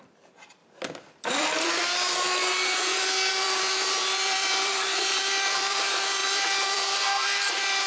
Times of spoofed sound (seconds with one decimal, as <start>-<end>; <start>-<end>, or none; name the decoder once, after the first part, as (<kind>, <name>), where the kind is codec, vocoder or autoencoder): 0.0-0.6 (vocoder, BigVGAN v2); 1.3-2.4; 3.3-7.9